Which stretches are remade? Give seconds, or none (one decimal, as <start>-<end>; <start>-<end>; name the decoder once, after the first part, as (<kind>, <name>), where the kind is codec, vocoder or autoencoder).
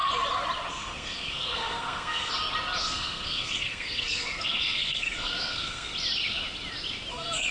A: 0.7-2.3 (codec, SNAC); 2.8-5.9; 7.1-7.5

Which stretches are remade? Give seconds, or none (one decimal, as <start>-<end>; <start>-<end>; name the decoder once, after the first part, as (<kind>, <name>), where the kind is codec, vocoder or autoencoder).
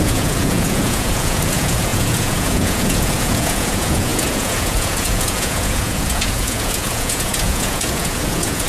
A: 0.0-8.7 (vocoder, Vocos)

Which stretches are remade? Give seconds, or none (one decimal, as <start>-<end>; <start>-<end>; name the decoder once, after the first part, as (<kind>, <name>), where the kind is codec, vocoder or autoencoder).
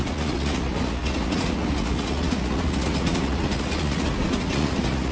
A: 0.0-5.1 (vocoder, Vocos)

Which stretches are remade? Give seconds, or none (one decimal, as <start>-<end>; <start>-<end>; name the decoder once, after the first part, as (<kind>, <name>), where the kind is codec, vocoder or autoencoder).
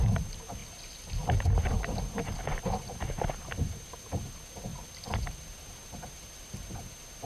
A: none